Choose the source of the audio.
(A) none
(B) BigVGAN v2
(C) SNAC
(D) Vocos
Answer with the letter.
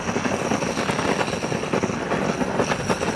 A